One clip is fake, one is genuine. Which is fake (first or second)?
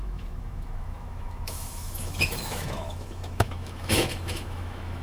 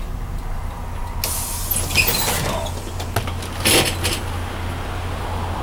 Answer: first